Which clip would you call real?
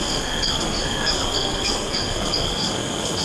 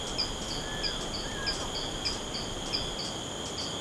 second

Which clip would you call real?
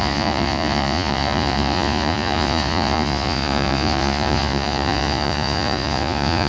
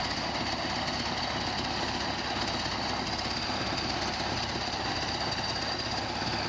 second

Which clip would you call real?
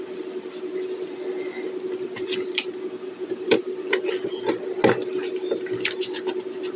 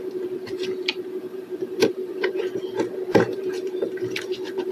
first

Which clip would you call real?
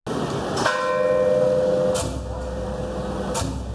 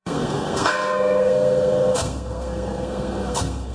first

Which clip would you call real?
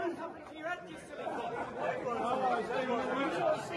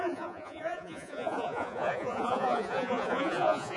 first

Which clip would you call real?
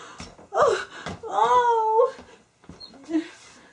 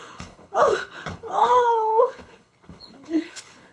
first